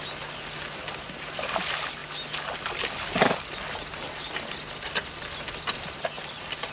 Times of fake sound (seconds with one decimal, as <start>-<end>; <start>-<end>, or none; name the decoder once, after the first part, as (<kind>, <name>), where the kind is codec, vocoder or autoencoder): none